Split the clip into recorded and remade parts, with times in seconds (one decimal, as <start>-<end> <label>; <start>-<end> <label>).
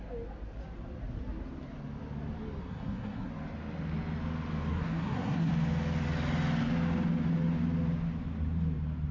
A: 0.0-2.6 recorded; 2.6-3.3 remade; 3.3-4.7 recorded; 4.7-5.5 remade; 5.5-9.1 recorded